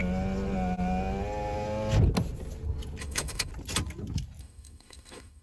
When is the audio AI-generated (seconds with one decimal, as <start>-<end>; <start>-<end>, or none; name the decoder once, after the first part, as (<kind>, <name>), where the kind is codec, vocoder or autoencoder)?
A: 3.0-3.5 (autoencoder, DAC-VAE); 4.4-5.4